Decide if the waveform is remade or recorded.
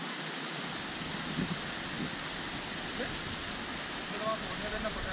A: recorded